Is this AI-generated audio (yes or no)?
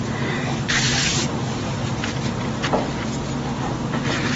no